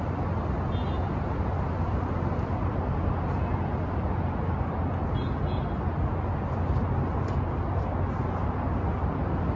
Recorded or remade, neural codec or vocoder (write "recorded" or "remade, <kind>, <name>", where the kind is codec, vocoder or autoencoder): recorded